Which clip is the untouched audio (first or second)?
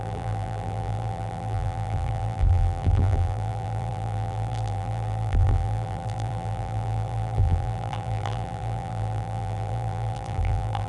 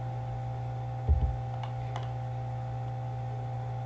second